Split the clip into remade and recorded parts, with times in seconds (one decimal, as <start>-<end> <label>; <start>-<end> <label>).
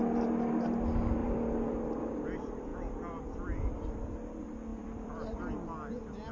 0.0-1.2 recorded; 1.2-2.2 remade; 2.2-4.7 recorded; 4.7-5.4 remade; 5.4-6.3 recorded